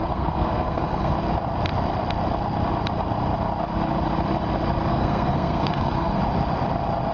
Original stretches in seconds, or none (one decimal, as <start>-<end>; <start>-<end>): 1.1-4.9; 6.2-7.1